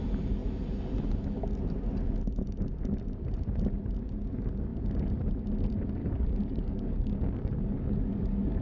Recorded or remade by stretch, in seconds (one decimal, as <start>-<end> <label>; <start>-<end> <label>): 0.0-6.0 recorded; 6.0-8.6 remade